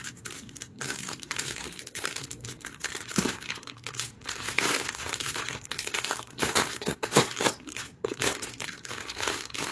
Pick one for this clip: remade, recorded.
remade